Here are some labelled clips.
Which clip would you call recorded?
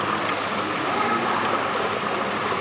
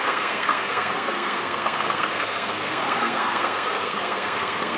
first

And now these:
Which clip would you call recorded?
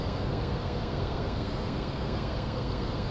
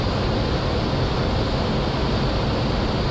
second